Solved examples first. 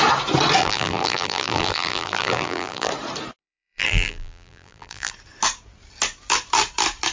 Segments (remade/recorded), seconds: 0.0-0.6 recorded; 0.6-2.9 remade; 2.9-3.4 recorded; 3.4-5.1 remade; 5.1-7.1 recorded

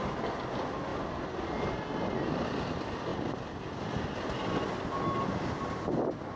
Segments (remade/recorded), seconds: 0.0-6.4 recorded

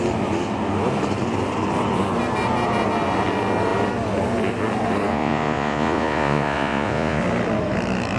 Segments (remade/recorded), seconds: 0.0-5.1 recorded; 5.1-7.2 remade; 7.2-8.2 recorded

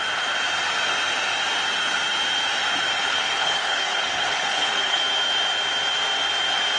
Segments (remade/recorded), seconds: 0.0-2.9 recorded; 2.9-5.0 remade; 5.0-6.8 recorded

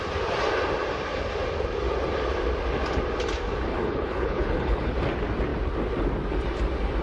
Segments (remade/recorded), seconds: 0.0-3.7 recorded; 3.7-4.9 remade; 4.9-7.0 recorded

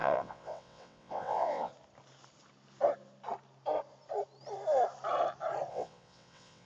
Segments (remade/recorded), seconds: 0.0-1.7 remade; 1.7-5.7 recorded; 5.7-6.7 remade